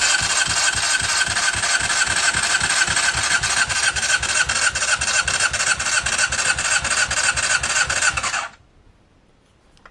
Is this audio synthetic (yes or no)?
no